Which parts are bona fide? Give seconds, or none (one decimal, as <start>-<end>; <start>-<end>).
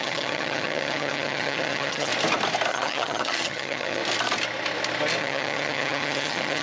2.1-2.7; 4.0-5.2